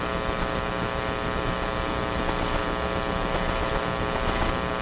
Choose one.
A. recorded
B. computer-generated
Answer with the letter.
A